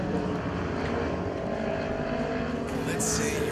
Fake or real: real